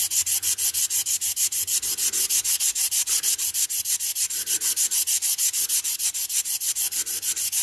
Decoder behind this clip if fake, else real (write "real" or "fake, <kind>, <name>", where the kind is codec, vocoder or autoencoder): real